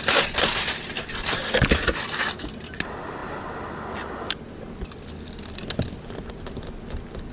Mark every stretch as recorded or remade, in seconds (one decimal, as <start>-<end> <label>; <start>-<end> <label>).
0.0-7.3 recorded